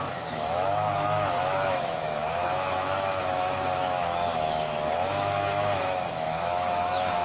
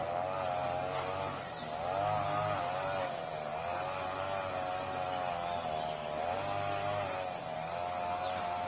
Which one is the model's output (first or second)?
first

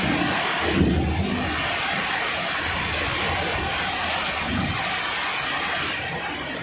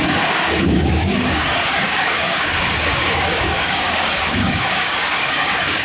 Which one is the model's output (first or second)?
second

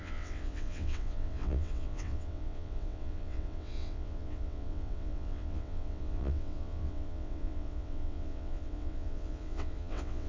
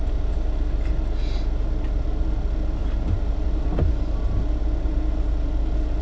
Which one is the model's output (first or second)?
first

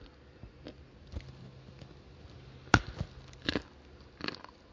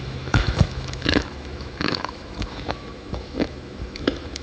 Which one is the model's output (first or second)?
second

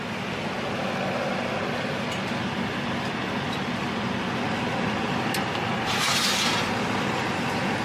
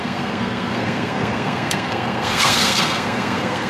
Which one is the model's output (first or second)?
second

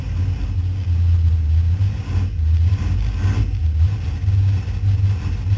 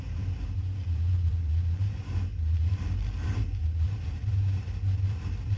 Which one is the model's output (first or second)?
second